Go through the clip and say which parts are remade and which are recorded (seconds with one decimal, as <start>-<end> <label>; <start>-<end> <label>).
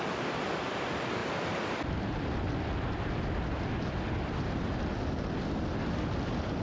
0.0-6.6 recorded